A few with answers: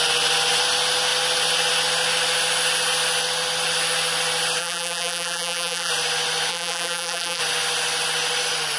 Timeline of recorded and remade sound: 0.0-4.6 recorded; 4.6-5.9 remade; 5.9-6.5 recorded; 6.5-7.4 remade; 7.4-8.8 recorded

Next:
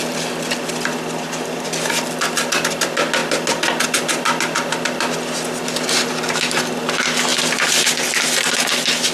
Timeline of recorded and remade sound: 0.0-9.1 recorded

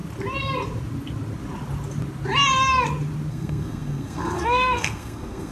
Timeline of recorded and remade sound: 0.0-3.3 recorded; 3.3-5.5 remade

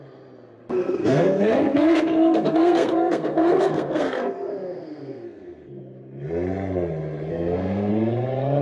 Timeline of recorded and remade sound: 0.0-0.7 recorded; 0.7-5.8 remade; 5.8-7.3 recorded; 7.3-7.9 remade; 7.9-8.6 recorded

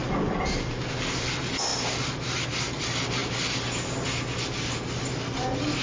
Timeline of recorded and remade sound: 0.0-5.8 recorded

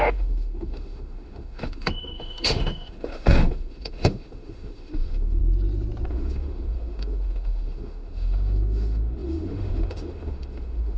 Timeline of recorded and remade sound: 0.0-5.4 remade; 5.4-6.1 recorded; 6.1-11.0 remade